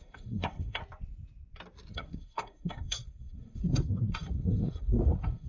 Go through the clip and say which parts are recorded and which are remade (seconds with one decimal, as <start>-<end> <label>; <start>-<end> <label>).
0.0-0.8 remade; 0.8-1.9 recorded; 1.9-5.5 remade